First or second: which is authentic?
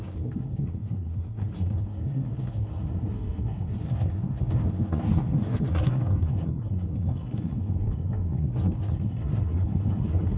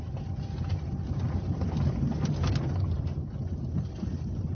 second